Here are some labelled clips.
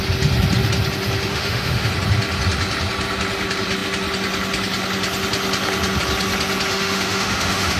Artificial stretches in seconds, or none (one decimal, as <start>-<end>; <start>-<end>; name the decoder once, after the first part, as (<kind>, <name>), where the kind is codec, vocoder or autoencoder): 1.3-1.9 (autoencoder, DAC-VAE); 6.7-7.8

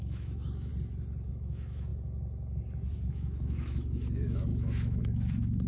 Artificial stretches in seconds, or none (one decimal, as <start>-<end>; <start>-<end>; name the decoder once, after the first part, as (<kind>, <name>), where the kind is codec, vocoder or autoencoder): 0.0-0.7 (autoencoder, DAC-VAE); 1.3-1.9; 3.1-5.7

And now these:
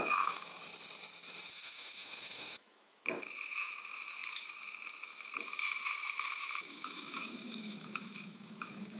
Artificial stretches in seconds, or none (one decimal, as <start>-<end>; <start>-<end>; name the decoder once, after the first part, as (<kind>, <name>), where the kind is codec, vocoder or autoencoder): 0.0-0.6 (autoencoder, DAC-VAE); 1.5-9.0

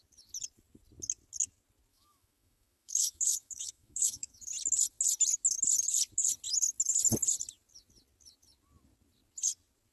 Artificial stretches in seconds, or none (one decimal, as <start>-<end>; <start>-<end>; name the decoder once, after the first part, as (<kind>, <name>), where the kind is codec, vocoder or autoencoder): 1.9-4.5 (autoencoder, DAC-VAE)

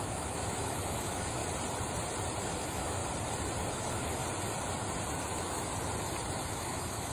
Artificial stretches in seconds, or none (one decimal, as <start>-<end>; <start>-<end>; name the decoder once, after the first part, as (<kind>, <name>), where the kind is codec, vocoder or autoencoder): 0.0-1.4 (autoencoder, DAC-VAE); 2.4-3.0; 3.7-4.2; 5.3-5.7; 6.5-7.1

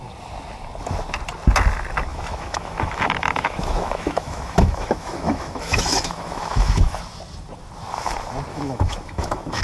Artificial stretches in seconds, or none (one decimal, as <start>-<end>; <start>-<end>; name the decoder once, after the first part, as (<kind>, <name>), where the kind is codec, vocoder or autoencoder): 2.1-7.0 (autoencoder, DAC-VAE); 8.5-9.6